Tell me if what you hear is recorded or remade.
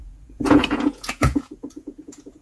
remade